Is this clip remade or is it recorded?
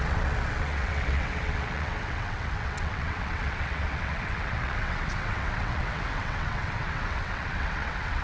remade